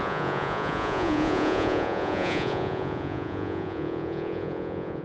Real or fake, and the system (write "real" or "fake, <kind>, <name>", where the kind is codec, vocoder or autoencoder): fake, vocoder, Vocos